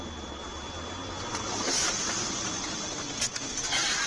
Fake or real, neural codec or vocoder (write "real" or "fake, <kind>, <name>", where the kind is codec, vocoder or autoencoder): real